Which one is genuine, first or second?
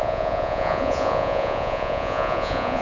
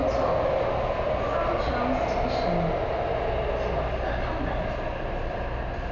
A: second